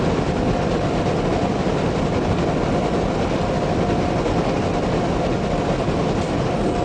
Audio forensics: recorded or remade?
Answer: recorded